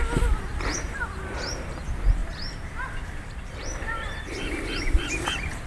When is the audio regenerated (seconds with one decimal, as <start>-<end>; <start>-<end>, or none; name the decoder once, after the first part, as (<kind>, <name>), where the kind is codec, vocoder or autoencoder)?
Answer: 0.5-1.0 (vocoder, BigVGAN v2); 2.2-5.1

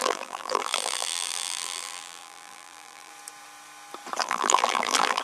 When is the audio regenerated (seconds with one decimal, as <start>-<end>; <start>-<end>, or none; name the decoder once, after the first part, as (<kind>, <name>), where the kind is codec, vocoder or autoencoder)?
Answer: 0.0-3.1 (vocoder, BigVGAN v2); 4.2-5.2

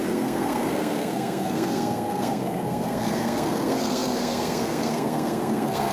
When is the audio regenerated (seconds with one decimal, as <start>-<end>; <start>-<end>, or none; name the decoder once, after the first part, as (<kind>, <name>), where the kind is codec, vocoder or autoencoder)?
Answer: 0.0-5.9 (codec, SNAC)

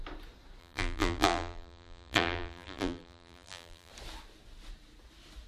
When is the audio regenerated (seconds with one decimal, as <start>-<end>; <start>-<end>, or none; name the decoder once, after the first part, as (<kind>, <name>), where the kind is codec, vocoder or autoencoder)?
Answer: 0.6-3.9 (vocoder, BigVGAN v2)